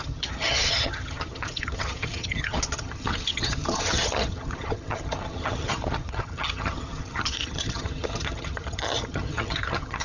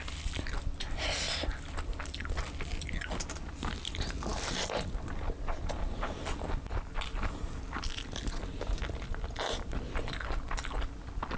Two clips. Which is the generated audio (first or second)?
first